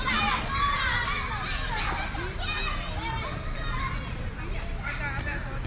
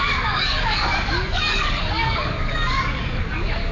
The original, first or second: first